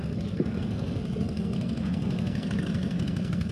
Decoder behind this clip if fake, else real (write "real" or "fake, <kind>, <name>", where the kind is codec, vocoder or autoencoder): fake, codec, SNAC